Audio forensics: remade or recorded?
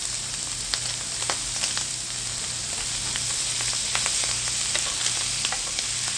recorded